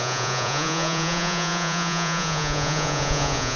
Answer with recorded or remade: remade